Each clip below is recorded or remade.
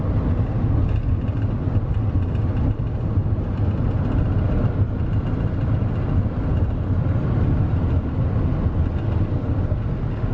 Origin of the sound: recorded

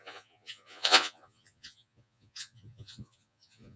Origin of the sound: remade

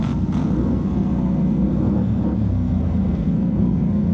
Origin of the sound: remade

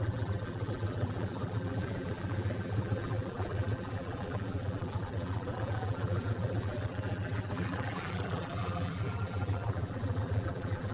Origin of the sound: remade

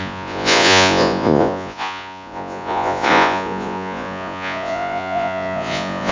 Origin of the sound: remade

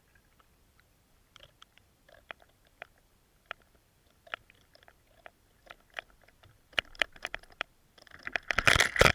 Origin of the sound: remade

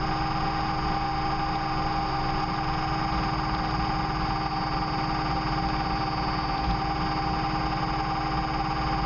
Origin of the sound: recorded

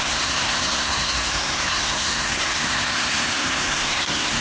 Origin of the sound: remade